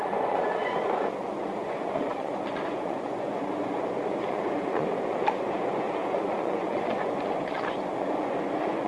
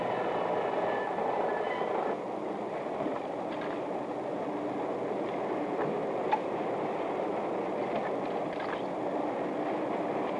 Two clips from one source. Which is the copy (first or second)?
first